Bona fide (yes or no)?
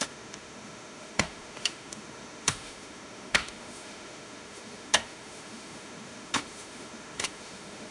no